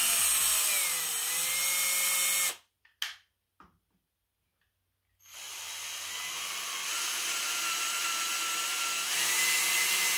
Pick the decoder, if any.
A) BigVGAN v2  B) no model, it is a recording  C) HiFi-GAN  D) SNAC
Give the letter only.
B